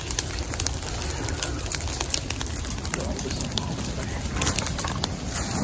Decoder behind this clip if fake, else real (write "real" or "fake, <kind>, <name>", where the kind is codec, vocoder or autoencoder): real